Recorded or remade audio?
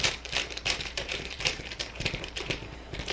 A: remade